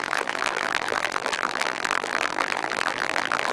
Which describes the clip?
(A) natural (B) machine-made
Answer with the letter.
B